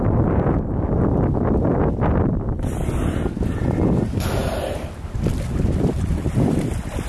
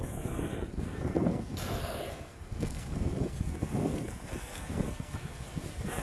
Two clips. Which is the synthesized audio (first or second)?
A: second